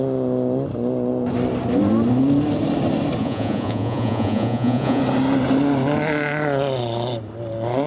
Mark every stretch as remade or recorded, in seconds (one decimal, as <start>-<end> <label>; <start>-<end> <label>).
0.0-3.2 recorded; 3.2-5.0 remade; 5.0-7.9 recorded